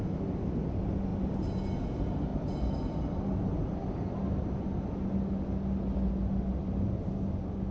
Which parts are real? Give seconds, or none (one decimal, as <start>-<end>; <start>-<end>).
0.0-7.7